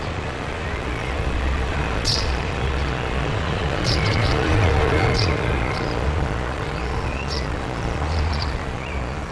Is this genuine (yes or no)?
no